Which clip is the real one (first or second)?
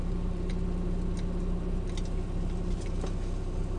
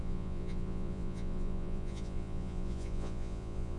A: first